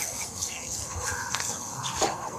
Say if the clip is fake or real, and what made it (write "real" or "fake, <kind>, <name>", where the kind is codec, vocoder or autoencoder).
fake, codec, SNAC